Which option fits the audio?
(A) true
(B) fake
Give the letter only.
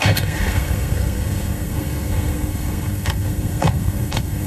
B